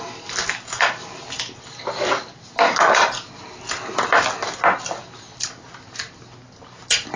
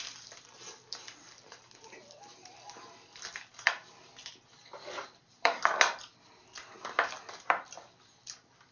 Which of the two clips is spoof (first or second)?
second